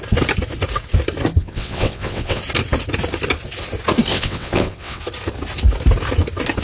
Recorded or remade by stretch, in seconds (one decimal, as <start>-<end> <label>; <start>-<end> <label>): 0.0-1.4 recorded; 1.4-2.4 remade; 2.4-4.1 recorded; 4.1-5.0 remade; 5.0-6.6 recorded